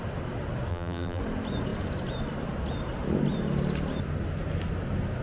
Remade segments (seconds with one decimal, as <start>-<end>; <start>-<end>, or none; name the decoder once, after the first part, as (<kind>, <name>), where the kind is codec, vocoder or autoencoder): 0.7-1.2 (vocoder, BigVGAN v2)